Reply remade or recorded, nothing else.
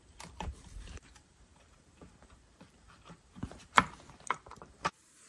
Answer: remade